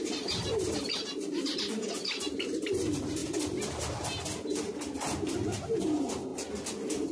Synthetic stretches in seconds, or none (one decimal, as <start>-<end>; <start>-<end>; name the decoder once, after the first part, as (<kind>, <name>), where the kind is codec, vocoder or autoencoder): 0.0-1.8 (vocoder, BigVGAN v2); 2.4-3.2; 5.8-6.3